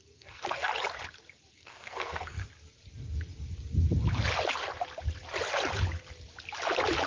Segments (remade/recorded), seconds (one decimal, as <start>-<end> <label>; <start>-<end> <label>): 0.0-0.7 remade; 0.7-1.5 recorded; 1.5-2.4 remade; 2.4-7.1 recorded